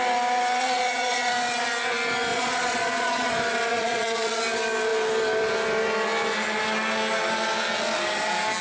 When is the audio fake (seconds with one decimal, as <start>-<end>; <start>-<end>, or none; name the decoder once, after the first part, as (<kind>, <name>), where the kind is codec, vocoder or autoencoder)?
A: 0.6-1.3 (vocoder, Vocos); 2.3-3.3; 3.7-4.4